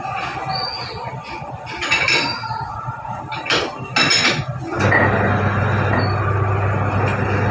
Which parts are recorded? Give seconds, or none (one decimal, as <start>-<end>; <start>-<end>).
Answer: 0.0-2.3; 3.2-7.5